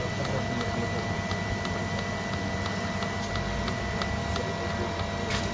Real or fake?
real